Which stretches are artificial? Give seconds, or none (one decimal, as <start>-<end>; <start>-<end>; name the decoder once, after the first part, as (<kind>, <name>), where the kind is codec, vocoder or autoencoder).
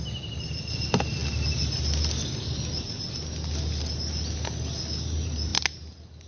none